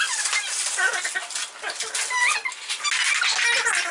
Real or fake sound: real